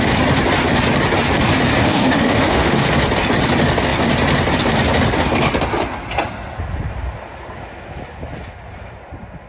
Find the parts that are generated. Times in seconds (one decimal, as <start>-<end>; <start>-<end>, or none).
1.8-2.9